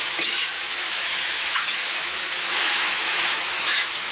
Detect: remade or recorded remade